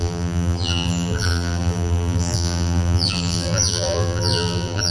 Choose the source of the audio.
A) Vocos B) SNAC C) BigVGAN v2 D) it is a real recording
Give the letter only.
C